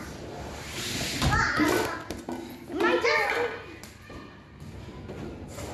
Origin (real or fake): real